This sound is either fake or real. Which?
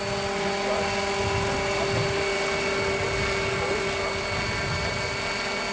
real